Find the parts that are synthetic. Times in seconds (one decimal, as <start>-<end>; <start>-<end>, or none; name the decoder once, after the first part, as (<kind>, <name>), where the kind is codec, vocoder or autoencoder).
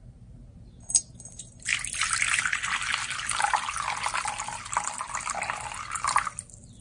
none